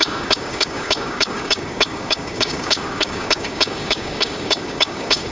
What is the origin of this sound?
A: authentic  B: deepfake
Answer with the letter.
B